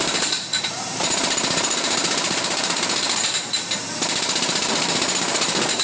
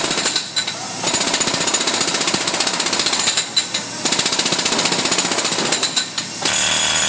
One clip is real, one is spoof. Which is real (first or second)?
second